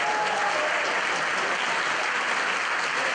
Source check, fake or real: real